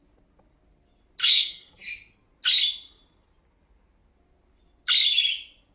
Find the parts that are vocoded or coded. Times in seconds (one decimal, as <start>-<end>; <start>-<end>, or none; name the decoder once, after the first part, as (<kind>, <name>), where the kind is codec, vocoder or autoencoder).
1.2-1.8 (codec, SNAC)